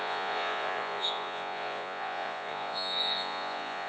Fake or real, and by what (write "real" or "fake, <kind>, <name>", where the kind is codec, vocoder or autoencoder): fake, vocoder, Vocos